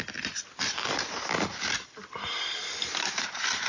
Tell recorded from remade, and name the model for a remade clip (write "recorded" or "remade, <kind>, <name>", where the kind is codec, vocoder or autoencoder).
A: recorded